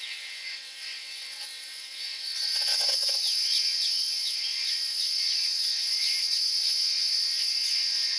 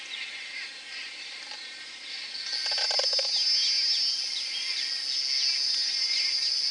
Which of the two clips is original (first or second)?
second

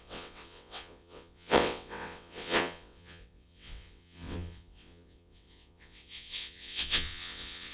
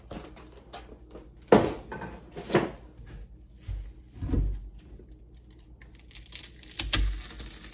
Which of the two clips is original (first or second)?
second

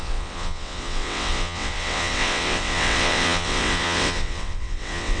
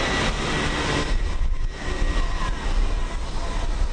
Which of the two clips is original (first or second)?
second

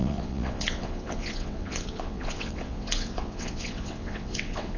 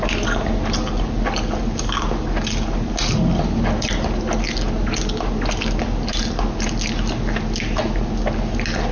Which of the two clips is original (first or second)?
second